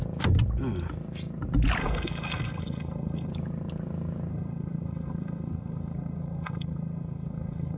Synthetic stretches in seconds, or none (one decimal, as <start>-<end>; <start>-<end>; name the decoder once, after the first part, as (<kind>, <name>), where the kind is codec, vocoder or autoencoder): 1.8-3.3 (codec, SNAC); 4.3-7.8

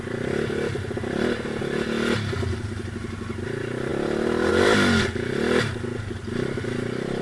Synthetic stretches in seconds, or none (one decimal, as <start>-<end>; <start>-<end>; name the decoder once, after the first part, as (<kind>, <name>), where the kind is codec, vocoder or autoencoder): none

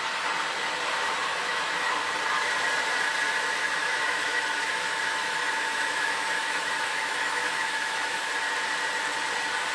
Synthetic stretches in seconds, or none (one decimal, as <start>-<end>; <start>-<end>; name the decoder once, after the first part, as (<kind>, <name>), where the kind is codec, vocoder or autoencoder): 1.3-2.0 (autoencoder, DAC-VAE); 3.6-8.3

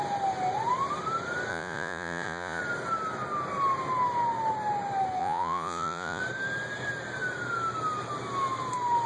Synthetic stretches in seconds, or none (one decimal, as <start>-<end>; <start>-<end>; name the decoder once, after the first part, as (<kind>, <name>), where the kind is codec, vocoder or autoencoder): 1.5-2.6 (vocoder, Vocos); 5.2-6.2

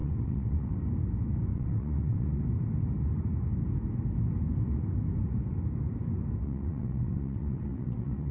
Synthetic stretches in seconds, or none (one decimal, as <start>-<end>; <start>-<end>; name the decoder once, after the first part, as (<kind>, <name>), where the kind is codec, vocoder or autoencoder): 0.0-0.7 (vocoder, WaveNeXt); 1.5-2.4; 6.4-8.3

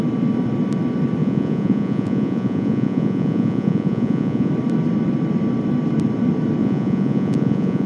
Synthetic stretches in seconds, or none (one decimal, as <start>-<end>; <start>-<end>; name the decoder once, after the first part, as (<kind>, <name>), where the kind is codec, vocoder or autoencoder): 1.2-4.5 (vocoder, Vocos); 6.6-7.9

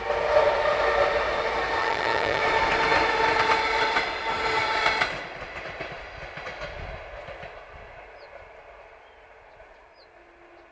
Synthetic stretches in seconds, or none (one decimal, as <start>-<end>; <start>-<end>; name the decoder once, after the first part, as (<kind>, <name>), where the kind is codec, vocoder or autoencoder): 1.8-2.4 (vocoder, HiFi-GAN)

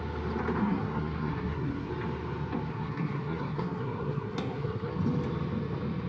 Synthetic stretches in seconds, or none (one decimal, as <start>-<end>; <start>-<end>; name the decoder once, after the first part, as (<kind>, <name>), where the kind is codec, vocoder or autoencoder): 0.6-1.9 (codec, SNAC); 2.7-4.9